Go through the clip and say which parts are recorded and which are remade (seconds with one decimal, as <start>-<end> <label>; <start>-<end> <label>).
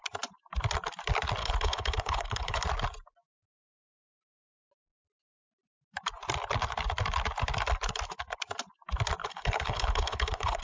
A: 0.0-1.4 recorded; 1.4-2.6 remade; 2.6-9.2 recorded; 9.2-10.6 remade